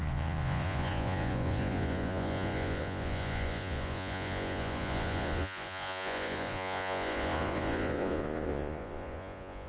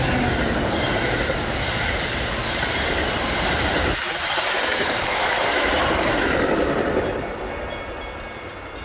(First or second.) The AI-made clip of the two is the first